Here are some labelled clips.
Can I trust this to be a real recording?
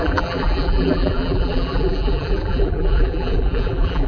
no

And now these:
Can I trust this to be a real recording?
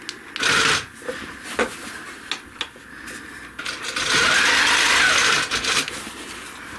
yes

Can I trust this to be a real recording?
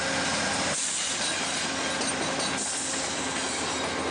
yes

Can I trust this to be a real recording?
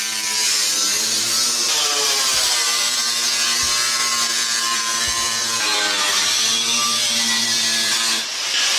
no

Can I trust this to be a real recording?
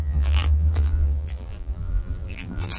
no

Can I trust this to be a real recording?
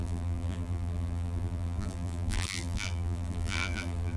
no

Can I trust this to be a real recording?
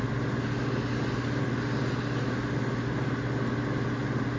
yes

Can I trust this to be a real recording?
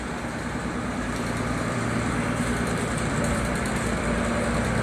no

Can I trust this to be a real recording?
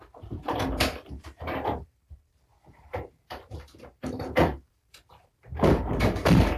no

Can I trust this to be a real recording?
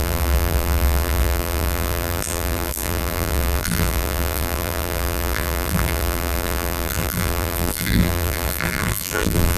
no